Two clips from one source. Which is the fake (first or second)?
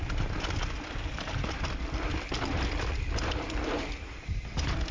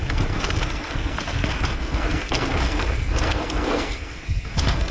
second